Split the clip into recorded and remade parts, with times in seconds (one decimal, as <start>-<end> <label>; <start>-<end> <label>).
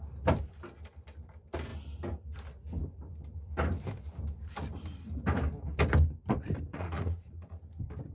0.0-6.7 recorded; 6.7-7.6 remade; 7.6-8.1 recorded